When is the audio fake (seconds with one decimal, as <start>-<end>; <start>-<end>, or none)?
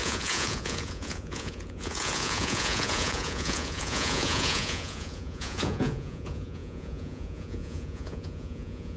0.0-9.0